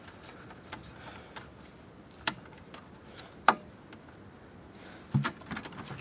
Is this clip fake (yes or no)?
no